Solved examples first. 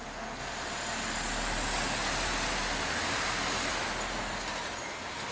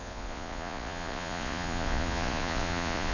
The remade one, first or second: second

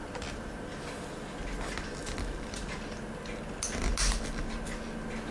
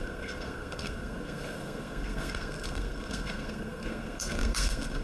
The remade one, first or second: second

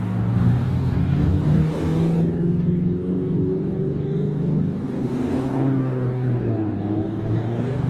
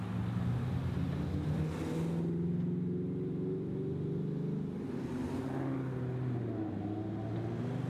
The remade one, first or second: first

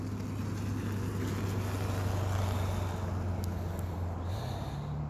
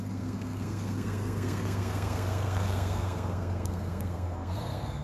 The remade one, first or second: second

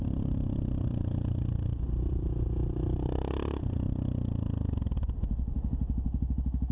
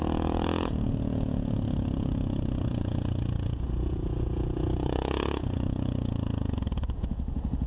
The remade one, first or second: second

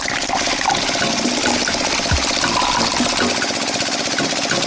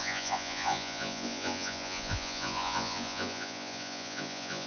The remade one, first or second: second